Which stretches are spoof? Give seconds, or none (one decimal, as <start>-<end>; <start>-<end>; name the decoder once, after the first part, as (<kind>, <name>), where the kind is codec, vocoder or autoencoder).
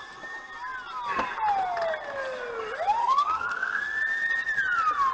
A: 3.0-3.8 (codec, SNAC)